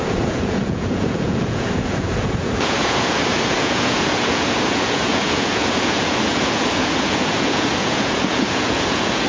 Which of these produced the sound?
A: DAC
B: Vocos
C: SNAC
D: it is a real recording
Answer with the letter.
B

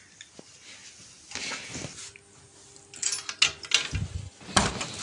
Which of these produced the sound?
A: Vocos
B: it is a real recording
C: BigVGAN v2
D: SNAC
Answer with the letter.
B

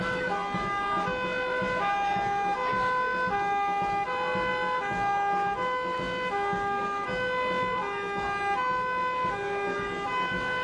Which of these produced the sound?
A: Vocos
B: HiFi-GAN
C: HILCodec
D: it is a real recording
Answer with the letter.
D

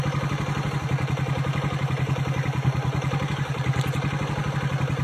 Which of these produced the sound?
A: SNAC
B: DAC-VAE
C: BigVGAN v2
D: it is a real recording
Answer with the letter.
D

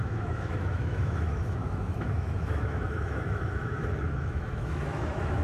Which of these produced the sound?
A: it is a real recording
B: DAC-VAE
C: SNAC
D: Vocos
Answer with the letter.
B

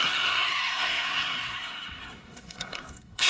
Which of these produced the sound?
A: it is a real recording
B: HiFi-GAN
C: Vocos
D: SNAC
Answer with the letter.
D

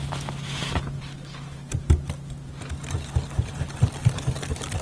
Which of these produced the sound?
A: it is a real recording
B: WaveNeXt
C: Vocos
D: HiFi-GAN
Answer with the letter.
A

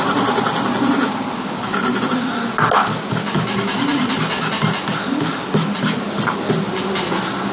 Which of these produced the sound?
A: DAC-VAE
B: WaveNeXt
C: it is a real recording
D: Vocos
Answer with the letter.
C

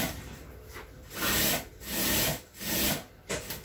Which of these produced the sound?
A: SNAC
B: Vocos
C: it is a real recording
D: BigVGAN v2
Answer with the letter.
C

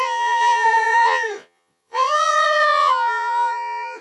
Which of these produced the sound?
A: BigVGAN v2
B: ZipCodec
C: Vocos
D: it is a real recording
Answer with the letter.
C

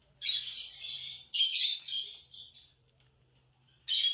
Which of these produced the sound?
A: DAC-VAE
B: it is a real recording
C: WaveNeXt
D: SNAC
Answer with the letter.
B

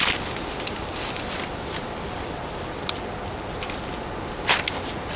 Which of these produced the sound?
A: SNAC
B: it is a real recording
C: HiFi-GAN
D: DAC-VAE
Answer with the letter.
B